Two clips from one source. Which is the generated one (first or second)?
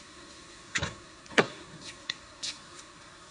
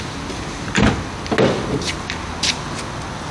first